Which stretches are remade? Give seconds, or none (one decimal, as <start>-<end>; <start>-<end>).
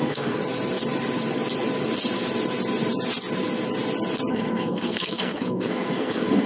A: 0.0-0.4; 4.3-6.5